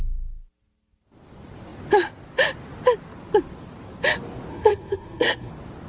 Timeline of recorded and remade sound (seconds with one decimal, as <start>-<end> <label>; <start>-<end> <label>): 0.0-4.5 recorded; 4.5-5.5 remade; 5.5-5.9 recorded